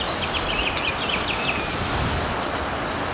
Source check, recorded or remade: recorded